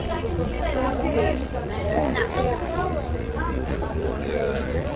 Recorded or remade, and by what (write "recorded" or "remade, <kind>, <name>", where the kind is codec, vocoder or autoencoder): remade, vocoder, Vocos